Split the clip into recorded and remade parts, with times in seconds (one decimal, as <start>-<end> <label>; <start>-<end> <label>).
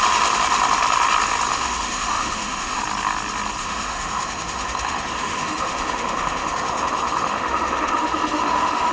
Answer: 0.0-1.5 recorded; 1.5-2.8 remade; 2.8-3.6 recorded; 3.6-8.9 remade